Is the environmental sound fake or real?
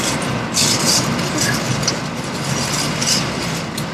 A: real